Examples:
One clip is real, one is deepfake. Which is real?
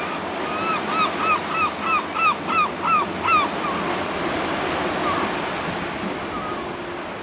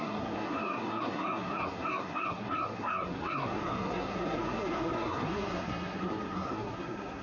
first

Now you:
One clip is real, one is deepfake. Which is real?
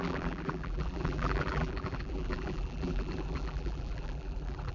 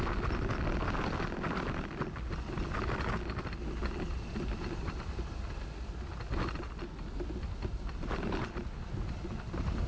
second